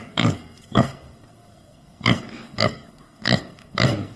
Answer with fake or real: fake